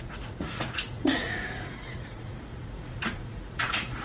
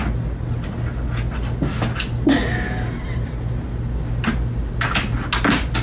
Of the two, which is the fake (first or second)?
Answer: first